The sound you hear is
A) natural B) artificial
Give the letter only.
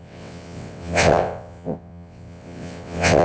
B